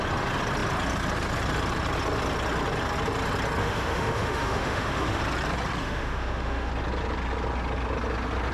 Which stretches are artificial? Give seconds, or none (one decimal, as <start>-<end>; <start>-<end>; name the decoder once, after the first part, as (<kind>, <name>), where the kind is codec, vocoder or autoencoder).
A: 3.6-5.2 (autoencoder, DAC-VAE); 5.8-6.7